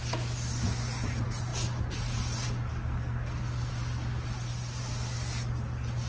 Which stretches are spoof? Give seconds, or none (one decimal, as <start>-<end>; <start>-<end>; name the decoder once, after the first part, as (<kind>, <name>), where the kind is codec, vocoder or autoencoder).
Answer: 2.7-3.7 (codec, SNAC)

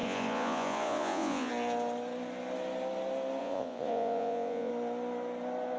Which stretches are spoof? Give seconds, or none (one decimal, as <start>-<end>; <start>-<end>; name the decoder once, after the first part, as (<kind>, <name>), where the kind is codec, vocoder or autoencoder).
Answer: 0.0-1.5 (vocoder, Vocos); 3.4-4.7

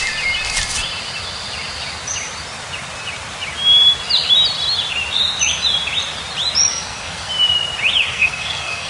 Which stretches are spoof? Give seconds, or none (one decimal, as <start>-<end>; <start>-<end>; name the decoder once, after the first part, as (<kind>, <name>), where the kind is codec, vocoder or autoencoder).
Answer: 6.7-7.3 (codec, SNAC); 8.1-8.9